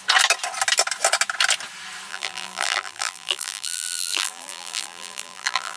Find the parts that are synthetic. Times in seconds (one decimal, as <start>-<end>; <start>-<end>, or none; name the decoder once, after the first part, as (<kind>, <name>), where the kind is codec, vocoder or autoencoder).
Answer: 2.1-5.8 (vocoder, BigVGAN v2)